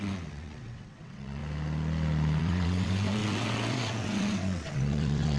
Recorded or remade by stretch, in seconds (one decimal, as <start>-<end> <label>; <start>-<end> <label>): 0.0-1.4 remade; 1.4-2.4 recorded; 2.4-5.4 remade